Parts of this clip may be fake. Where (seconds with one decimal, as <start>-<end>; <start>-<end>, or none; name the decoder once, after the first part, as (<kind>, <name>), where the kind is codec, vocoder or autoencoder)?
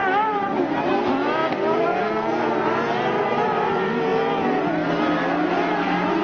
0.0-0.6 (vocoder, BigVGAN v2)